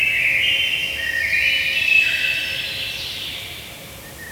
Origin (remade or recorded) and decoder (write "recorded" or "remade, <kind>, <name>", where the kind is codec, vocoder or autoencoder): recorded